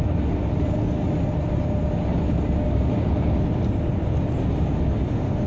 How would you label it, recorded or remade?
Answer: recorded